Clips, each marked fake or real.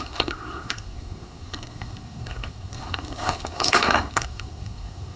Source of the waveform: fake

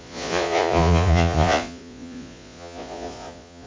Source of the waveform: fake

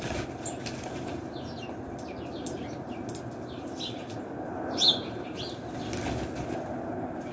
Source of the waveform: real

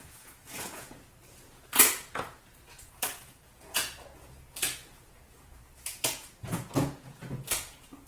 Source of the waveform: fake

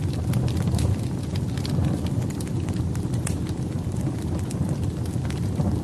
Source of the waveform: real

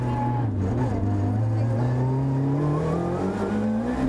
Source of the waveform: real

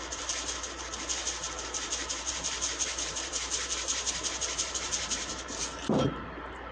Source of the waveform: fake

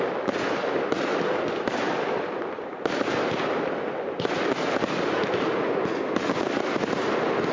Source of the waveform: real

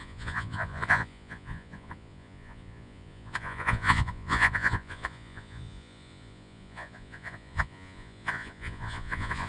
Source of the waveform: fake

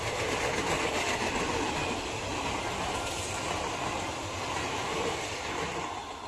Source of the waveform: real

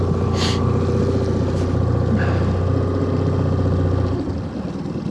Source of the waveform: real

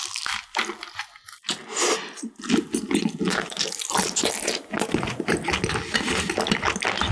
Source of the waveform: real